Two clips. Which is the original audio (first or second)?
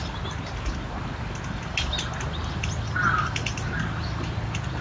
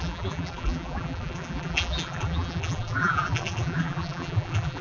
first